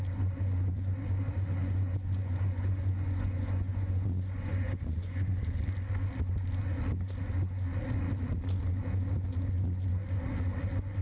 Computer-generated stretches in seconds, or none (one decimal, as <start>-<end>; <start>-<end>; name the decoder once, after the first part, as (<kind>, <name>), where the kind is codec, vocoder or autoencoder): 1.6-5.4 (vocoder, Vocos)